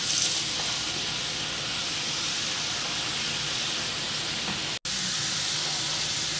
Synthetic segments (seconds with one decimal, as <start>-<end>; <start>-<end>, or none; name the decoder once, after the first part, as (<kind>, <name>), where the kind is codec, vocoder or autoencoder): none